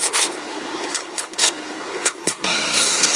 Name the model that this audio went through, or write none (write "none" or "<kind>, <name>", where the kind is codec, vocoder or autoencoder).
codec, SNAC